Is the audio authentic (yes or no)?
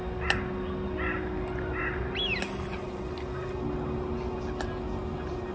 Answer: yes